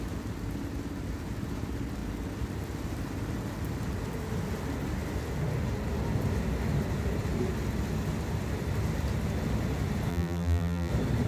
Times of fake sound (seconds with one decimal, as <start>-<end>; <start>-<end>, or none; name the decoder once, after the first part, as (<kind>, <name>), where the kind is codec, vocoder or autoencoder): 10.1-10.9 (vocoder, BigVGAN v2)